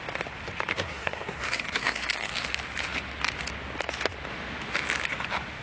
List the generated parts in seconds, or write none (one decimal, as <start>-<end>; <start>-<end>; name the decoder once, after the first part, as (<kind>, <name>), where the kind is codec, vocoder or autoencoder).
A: 0.7-2.3 (codec, SNAC)